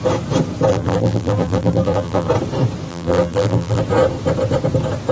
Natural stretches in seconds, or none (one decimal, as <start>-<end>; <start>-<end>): 0.0-0.7; 2.3-2.9; 3.8-5.1